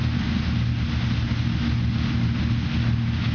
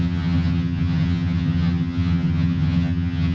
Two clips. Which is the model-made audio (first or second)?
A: second